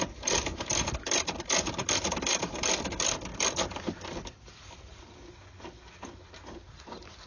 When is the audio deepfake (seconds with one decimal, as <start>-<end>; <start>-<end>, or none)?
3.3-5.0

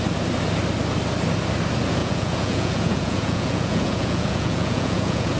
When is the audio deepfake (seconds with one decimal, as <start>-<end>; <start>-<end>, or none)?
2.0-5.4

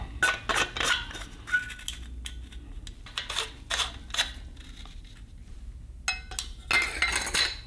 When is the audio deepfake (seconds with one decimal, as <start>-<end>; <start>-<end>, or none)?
none

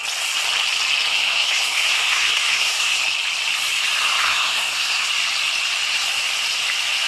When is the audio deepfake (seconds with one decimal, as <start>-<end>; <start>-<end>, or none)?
1.1-3.0; 4.2-5.1

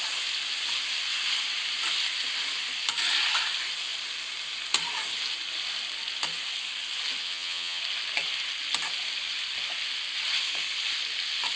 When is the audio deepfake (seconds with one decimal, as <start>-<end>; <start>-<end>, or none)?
7.2-7.8

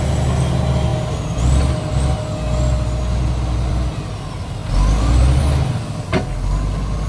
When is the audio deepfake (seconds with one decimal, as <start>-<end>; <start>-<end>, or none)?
none

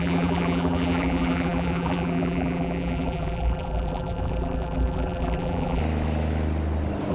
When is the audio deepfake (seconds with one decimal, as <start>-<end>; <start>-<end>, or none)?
0.0-5.8